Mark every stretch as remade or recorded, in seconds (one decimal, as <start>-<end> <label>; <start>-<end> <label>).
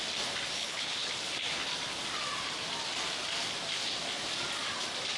0.0-0.6 recorded; 0.6-1.1 remade; 1.1-5.2 recorded